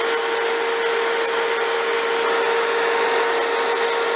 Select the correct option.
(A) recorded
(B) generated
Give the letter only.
A